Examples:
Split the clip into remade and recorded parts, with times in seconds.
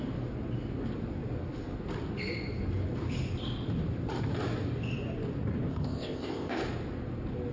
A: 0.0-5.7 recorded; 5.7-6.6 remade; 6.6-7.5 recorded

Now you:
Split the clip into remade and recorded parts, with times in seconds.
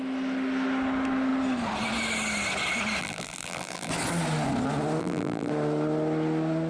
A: 0.0-3.0 recorded; 3.0-3.9 remade; 3.9-5.0 recorded; 5.0-5.5 remade; 5.5-6.7 recorded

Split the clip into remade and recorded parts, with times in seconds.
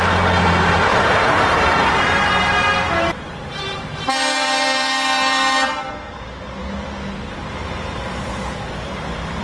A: 0.0-0.9 recorded; 0.9-5.9 remade; 5.9-7.3 recorded; 7.3-9.4 remade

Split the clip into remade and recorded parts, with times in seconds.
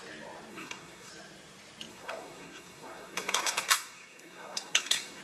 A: 0.0-0.5 recorded; 0.5-1.1 remade; 1.1-1.9 recorded; 1.9-5.2 remade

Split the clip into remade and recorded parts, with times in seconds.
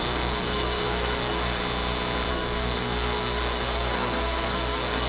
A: 0.0-1.6 remade; 1.6-2.3 recorded; 2.3-5.1 remade